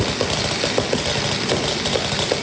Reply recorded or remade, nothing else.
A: recorded